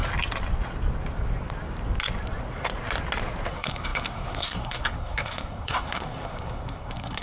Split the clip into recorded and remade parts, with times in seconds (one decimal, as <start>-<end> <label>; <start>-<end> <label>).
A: 0.0-3.5 recorded; 3.5-7.2 remade